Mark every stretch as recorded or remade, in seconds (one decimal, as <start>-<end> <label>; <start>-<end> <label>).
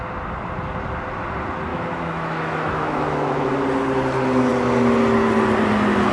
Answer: 0.0-1.7 recorded; 1.7-3.5 remade; 3.5-6.1 recorded